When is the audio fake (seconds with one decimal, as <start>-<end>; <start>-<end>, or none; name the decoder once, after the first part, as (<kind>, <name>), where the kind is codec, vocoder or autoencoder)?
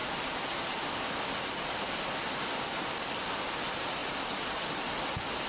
0.0-5.5 (vocoder, BigVGAN v2)